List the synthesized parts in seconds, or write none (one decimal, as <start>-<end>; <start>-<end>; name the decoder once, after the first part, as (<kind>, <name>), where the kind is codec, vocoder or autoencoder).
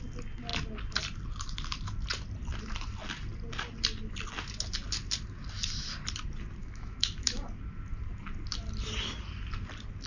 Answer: 6.6-7.4 (autoencoder, DAC-VAE)